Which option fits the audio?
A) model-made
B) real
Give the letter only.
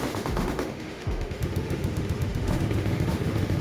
A